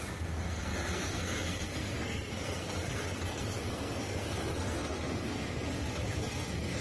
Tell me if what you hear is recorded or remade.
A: remade